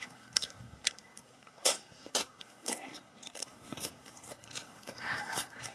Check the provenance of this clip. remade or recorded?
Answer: remade